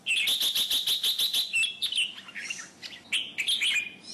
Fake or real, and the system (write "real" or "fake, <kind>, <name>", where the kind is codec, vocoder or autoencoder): real